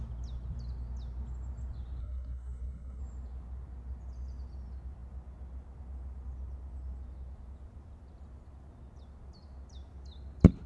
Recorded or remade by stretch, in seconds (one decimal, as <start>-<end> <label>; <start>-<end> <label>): 0.0-2.0 recorded; 2.0-3.0 remade; 3.0-10.7 recorded